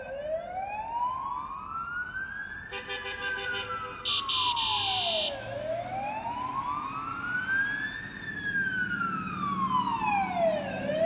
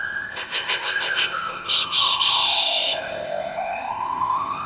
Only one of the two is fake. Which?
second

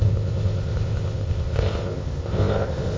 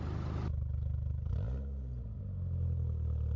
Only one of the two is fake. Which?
first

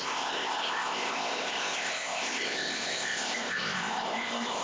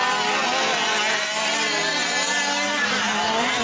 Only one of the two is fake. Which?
first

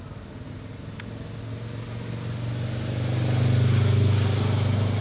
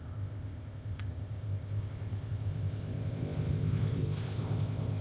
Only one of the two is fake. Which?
second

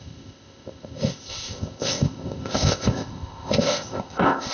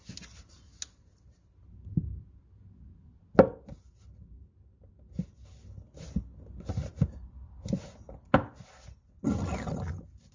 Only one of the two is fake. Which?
first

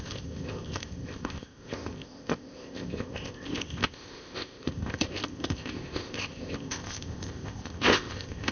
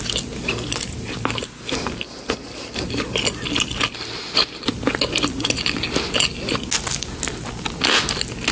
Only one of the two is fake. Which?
first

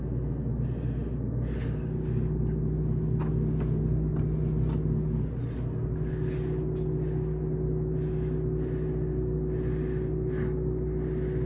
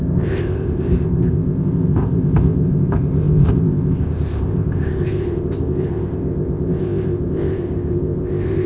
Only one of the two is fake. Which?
second